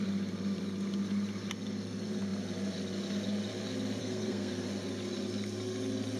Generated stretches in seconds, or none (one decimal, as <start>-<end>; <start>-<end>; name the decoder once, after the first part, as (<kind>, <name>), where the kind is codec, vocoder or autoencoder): 4.0-4.5 (codec, SNAC)